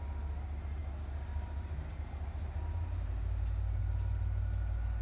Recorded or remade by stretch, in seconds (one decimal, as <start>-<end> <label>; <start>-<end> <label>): 0.0-5.0 recorded